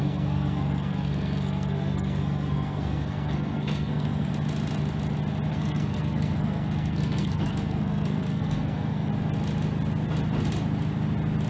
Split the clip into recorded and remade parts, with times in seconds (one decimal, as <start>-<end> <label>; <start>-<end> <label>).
0.0-4.3 remade; 4.3-5.5 recorded; 5.5-9.1 remade; 9.1-11.5 recorded